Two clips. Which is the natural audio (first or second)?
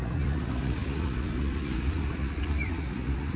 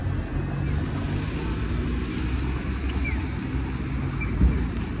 second